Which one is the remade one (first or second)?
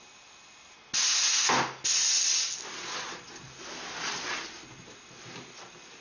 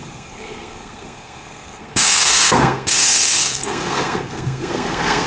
second